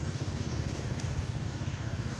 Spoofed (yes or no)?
yes